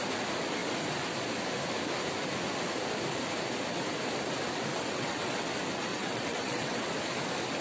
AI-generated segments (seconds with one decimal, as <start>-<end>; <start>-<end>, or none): 4.7-5.5; 5.9-6.9